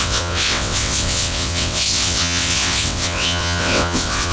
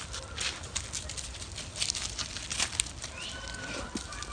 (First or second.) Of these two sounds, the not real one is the first